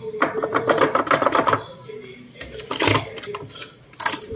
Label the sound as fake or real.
fake